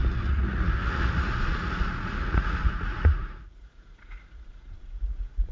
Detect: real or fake fake